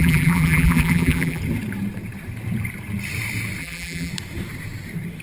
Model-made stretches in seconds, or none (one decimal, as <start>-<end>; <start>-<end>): 0.0-1.4; 3.6-4.1